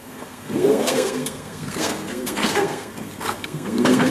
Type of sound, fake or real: fake